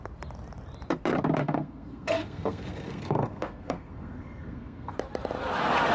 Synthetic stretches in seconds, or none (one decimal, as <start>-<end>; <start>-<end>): 1.4-4.9